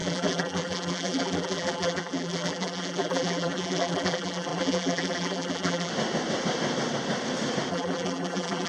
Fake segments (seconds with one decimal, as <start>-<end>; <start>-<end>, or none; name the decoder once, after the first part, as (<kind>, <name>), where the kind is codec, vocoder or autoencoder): 0.0-5.9 (vocoder, BigVGAN v2); 7.7-8.7